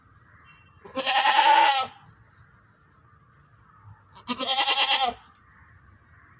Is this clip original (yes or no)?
yes